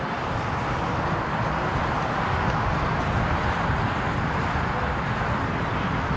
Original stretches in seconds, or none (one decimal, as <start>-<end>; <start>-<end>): 0.0-6.2